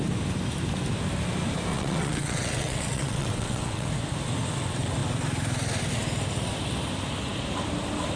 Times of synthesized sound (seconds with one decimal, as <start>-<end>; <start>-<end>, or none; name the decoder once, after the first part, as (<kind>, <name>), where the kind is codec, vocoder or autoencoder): 1.7-3.9 (vocoder, WaveNeXt)